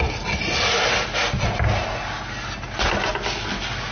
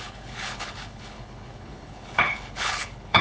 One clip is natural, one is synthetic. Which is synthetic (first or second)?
second